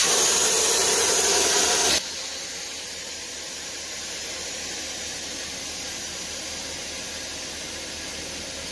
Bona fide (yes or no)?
yes